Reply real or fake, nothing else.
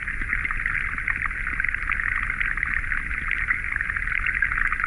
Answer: real